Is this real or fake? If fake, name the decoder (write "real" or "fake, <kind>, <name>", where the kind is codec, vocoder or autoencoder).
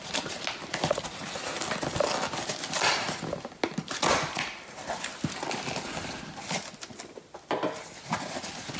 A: real